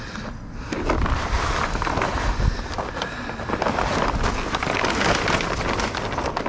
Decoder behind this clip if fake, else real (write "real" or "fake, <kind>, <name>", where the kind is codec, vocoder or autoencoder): real